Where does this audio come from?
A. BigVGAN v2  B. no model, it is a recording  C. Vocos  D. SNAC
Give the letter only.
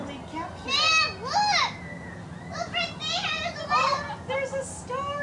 B